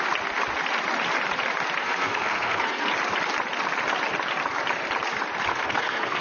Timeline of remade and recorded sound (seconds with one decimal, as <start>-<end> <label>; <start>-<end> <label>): 0.0-1.8 recorded; 1.8-2.9 remade; 2.9-5.5 recorded; 5.5-6.2 remade